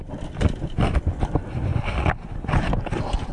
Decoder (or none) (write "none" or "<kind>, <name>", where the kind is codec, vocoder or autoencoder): none